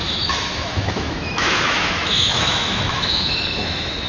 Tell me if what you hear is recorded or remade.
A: remade